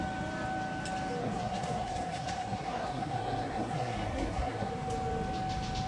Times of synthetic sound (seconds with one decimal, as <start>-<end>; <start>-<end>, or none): 1.2-4.7